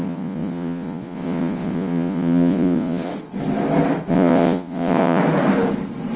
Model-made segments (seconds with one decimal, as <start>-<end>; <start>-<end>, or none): 0.0-3.1; 4.1-5.2